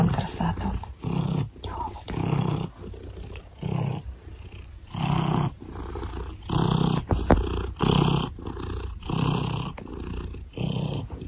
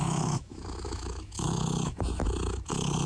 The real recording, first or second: first